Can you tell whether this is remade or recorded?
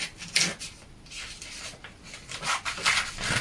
recorded